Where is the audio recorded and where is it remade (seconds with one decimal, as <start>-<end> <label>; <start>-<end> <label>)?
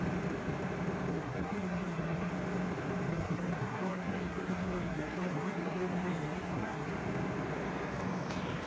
0.0-1.1 recorded; 1.1-2.3 remade; 2.3-3.1 recorded; 3.1-6.9 remade; 6.9-8.7 recorded